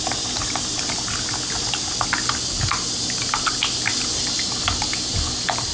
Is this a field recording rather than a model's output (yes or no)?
yes